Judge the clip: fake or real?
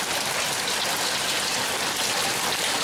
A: real